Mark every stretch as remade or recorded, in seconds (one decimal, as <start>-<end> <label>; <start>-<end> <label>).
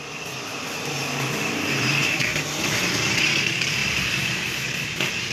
0.0-2.3 remade; 2.3-3.4 recorded; 3.4-5.3 remade